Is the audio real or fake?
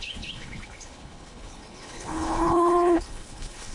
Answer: fake